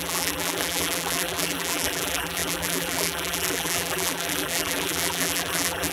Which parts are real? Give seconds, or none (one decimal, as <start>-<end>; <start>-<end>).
none